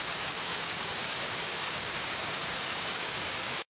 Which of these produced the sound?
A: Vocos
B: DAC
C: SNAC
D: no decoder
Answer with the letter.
B